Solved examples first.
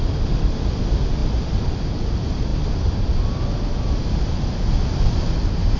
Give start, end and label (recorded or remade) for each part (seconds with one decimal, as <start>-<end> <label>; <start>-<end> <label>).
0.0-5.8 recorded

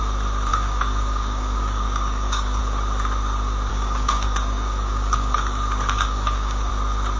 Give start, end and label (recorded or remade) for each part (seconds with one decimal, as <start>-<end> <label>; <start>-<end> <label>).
0.0-0.5 recorded; 0.5-2.6 remade; 2.6-3.7 recorded; 3.7-6.7 remade; 6.7-7.2 recorded

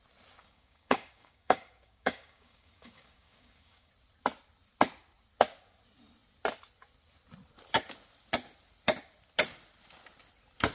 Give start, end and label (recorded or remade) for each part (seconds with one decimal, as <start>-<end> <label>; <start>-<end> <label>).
0.0-0.4 recorded; 0.4-3.9 remade; 3.9-10.7 recorded

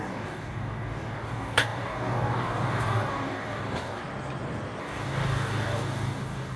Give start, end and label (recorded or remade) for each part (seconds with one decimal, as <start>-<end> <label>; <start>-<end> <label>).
0.0-4.0 remade; 4.0-4.8 recorded; 4.8-6.6 remade